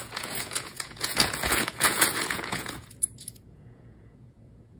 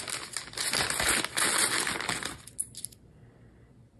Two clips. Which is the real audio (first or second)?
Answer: second